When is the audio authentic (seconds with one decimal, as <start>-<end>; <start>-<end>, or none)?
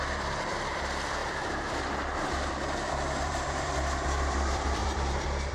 none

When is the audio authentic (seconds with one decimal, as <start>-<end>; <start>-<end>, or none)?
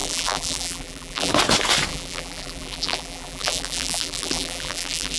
1.3-1.9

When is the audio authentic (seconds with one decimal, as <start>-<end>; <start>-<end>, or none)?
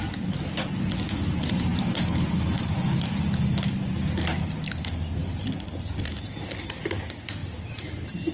0.0-5.2; 6.2-7.4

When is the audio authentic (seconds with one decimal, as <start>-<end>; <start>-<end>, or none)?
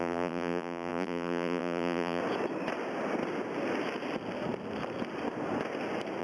2.2-6.2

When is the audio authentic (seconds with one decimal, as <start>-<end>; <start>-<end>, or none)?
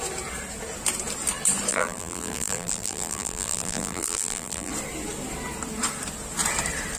0.0-1.7; 4.7-7.0